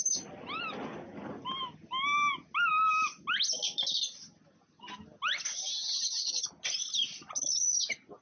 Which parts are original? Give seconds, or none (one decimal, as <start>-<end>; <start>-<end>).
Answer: 0.0-8.2